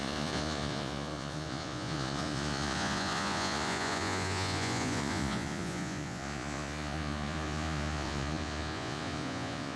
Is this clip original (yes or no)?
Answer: no